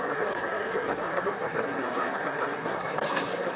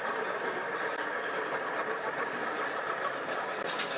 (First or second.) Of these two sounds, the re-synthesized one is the first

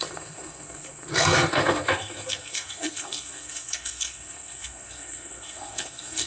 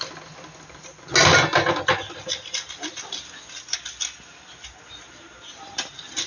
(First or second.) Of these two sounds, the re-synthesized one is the first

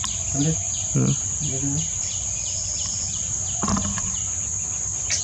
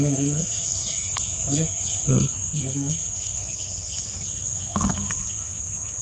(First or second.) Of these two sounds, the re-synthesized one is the second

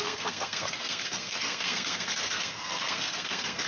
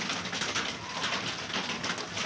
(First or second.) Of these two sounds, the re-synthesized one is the first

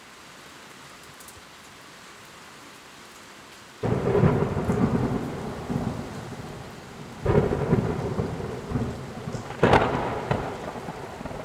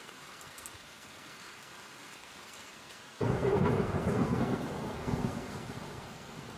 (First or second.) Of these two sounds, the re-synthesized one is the second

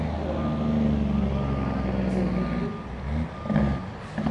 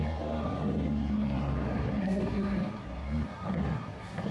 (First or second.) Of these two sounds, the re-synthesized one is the second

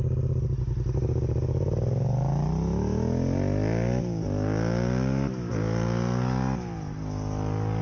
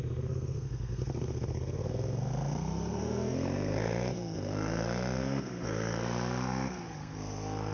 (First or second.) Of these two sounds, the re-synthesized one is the second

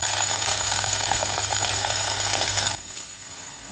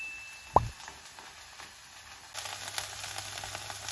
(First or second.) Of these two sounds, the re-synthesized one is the first